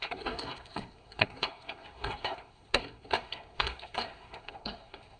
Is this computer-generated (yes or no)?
yes